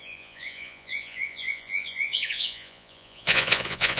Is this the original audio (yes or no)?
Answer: no